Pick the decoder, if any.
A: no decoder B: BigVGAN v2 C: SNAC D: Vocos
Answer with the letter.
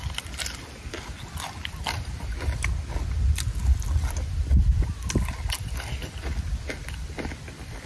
A